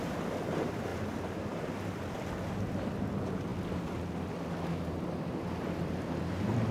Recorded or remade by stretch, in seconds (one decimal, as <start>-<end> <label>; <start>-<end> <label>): 0.0-6.7 recorded